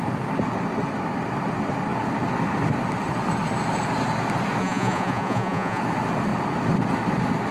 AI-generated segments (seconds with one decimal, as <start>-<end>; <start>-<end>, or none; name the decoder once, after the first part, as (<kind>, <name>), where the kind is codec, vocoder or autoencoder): 4.6-5.8 (vocoder, Vocos)